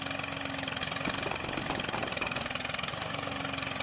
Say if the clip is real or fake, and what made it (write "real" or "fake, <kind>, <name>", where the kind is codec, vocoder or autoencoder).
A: real